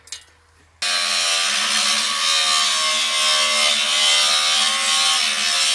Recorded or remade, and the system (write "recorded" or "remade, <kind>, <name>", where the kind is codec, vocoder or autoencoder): recorded